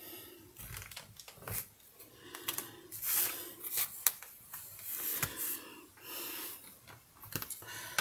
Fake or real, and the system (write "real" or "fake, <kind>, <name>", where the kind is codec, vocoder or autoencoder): real